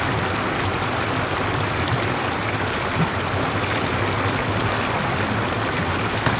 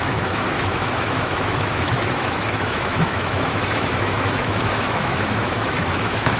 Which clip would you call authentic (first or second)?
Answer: first